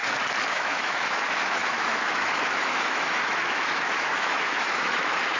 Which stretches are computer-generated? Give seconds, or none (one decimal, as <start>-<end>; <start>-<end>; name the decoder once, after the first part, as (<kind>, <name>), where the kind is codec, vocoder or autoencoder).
0.5-5.4 (autoencoder, DAC-VAE)